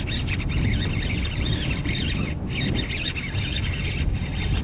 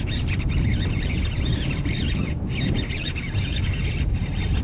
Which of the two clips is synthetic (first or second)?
second